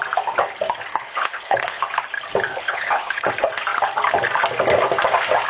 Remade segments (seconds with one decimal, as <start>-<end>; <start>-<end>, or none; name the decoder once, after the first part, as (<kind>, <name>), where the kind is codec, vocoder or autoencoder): 0.9-1.8 (codec, HILCodec); 2.5-3.3